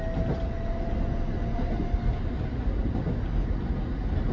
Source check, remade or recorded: recorded